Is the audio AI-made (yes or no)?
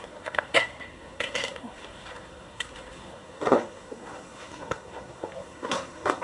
yes